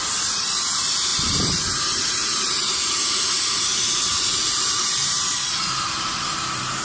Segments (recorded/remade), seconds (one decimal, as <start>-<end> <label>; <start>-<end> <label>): 0.0-6.8 remade